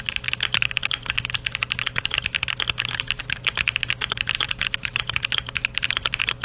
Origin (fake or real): real